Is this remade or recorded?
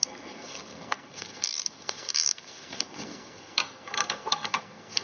remade